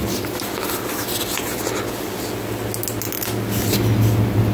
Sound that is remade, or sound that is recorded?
recorded